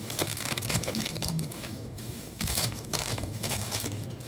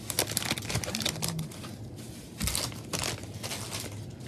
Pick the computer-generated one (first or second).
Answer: first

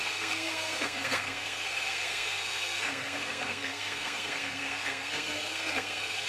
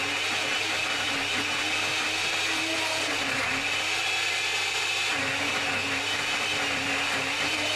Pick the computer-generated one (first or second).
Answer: first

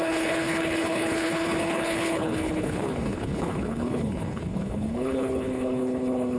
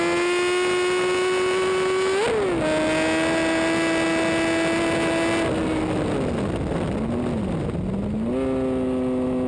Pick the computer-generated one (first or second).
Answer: first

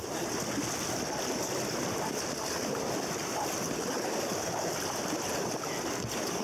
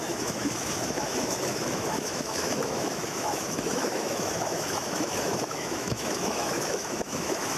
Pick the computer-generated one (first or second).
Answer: second